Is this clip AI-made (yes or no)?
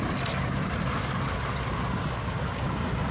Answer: no